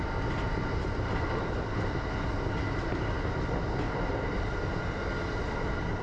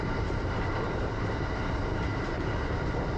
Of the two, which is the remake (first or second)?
second